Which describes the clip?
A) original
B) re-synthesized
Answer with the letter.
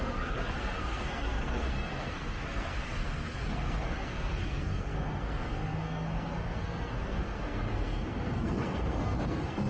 B